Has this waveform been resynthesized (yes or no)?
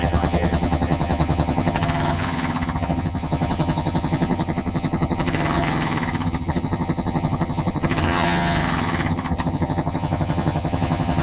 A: yes